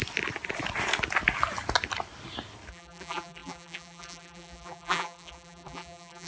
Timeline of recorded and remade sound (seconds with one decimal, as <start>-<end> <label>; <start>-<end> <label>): 0.0-2.7 recorded; 2.7-6.3 remade